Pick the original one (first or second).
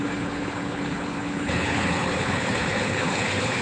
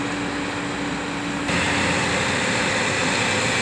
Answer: second